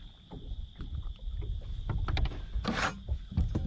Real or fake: real